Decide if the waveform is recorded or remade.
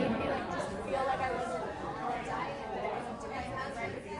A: remade